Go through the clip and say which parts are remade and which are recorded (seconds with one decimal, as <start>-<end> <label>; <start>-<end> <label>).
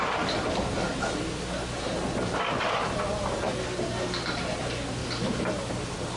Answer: 0.0-6.2 recorded